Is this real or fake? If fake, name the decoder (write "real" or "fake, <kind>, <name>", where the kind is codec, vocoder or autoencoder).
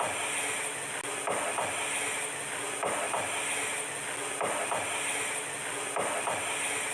real